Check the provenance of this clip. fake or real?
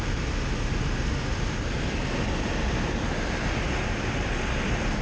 real